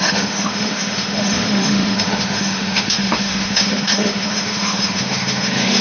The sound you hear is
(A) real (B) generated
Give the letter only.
B